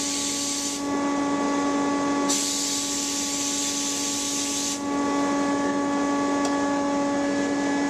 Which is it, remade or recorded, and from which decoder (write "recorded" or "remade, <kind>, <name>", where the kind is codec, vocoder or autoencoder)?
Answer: recorded